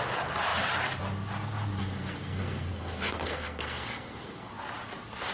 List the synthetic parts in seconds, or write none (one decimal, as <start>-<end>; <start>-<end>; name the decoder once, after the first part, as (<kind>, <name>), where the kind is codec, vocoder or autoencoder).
1.8-4.5 (codec, SNAC)